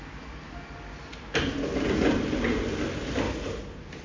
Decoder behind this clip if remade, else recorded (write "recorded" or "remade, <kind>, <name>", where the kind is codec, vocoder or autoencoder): recorded